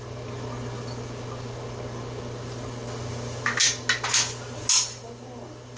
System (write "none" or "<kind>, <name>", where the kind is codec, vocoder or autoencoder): none